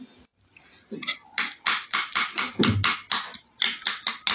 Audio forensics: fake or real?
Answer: real